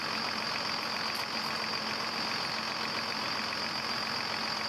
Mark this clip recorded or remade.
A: recorded